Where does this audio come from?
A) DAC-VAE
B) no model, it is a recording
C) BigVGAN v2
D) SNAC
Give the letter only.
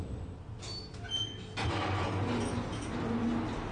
B